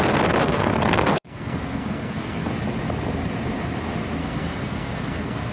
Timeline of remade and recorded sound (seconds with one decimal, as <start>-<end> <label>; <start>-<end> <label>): 0.0-0.4 recorded; 0.4-2.5 remade; 2.5-4.2 recorded; 4.2-5.5 remade